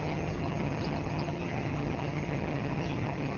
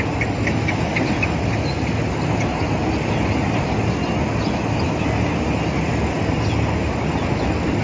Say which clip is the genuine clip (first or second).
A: second